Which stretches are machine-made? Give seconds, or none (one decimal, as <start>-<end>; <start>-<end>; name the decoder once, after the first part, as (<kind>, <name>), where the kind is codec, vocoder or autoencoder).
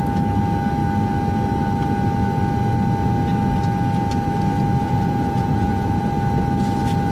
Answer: 4.8-6.1 (vocoder, Vocos)